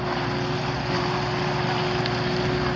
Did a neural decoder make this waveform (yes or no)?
no